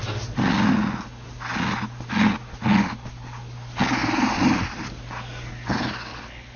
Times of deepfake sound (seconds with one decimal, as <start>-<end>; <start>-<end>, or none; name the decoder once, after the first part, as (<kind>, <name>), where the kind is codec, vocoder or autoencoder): 6.1-6.6 (codec, HILCodec)